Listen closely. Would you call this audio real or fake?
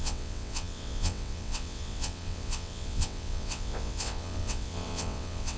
fake